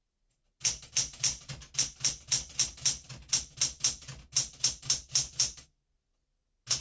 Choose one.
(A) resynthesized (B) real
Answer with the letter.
B